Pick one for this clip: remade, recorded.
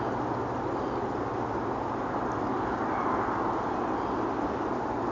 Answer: recorded